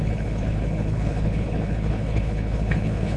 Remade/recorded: remade